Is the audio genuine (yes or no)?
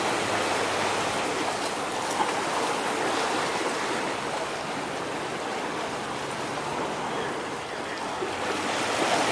yes